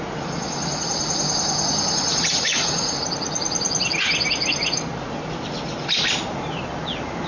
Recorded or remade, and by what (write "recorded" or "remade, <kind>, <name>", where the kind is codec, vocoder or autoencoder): recorded